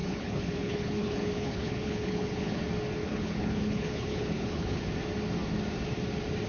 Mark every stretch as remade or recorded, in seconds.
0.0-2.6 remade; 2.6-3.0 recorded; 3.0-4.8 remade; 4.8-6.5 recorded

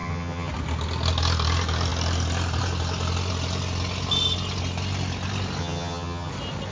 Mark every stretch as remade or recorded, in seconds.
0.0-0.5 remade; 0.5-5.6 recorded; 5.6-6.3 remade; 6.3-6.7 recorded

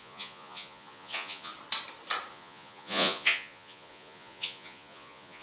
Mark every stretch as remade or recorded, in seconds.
0.0-1.5 remade; 1.5-2.3 recorded; 2.3-5.4 remade

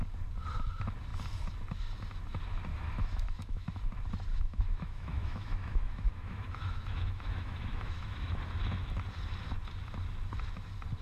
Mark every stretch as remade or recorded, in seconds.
0.0-2.7 recorded; 2.7-3.8 remade; 3.8-4.3 recorded; 4.3-8.4 remade; 8.4-11.0 recorded